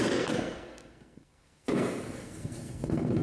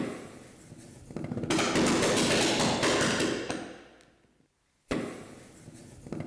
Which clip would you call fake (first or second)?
first